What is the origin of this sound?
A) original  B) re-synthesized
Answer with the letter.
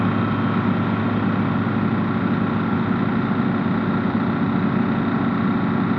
A